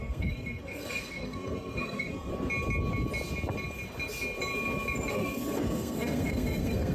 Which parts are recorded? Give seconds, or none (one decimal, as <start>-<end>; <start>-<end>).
2.3-5.1